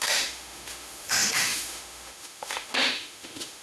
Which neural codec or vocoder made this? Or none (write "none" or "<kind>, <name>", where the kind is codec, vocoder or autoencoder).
autoencoder, DAC-VAE